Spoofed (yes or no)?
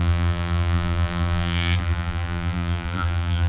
yes